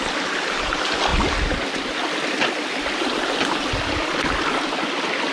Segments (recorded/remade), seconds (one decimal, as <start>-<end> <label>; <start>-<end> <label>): 0.0-5.3 recorded